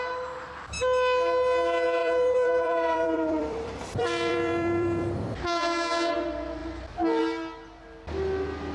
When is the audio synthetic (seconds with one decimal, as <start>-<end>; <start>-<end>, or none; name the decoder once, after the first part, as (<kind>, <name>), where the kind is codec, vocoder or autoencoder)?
2.0-5.3 (vocoder, BigVGAN v2)